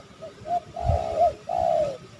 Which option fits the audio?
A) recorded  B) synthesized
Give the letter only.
A